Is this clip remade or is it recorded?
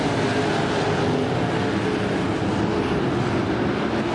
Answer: recorded